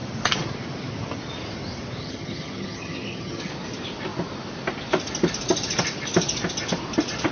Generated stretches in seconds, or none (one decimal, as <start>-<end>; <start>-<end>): 2.0-3.5